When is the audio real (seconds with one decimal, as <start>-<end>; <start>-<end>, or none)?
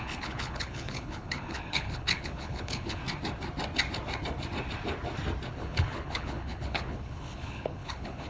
3.0-5.5